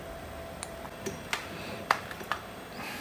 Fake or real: real